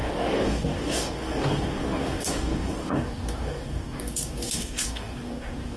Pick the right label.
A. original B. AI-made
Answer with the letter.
B